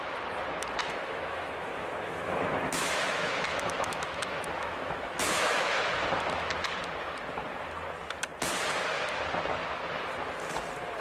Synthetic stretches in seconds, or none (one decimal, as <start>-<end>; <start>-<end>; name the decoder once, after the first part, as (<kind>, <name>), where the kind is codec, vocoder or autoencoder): 0.8-5.8 (autoencoder, DAC-VAE)